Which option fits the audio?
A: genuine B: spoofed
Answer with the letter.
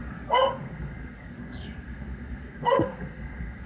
B